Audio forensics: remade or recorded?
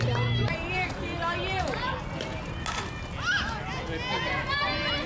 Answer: recorded